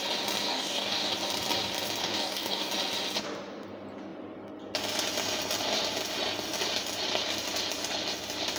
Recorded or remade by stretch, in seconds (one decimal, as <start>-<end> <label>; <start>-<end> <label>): 0.0-0.5 recorded; 0.5-1.1 remade; 1.1-2.0 recorded; 2.0-2.7 remade; 2.7-8.6 recorded